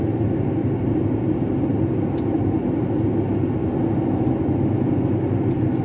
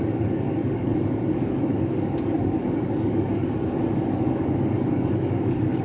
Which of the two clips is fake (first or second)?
second